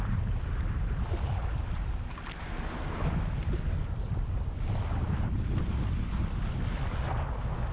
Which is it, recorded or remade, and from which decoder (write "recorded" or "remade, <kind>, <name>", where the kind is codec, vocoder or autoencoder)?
recorded